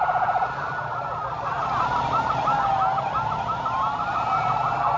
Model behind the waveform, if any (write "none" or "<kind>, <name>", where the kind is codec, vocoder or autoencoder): none